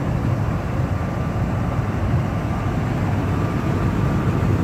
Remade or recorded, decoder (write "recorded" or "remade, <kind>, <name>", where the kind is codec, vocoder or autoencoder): recorded